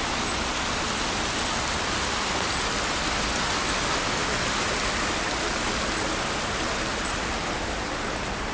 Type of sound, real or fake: real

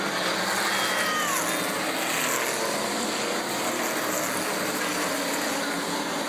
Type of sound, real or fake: real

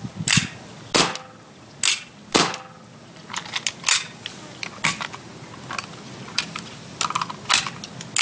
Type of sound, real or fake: real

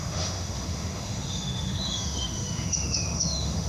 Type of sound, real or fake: fake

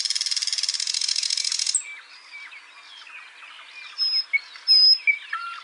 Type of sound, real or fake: real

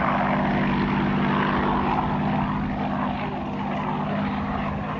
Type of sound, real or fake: real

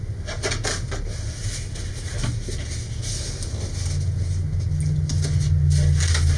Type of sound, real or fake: real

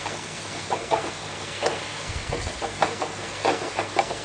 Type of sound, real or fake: fake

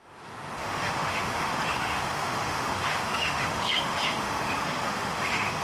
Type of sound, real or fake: fake